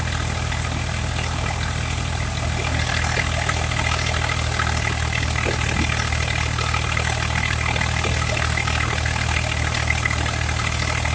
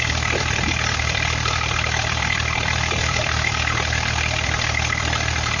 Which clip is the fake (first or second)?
second